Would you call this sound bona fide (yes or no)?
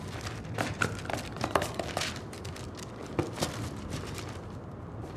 no